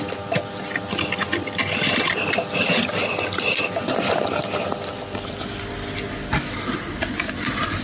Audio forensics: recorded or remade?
recorded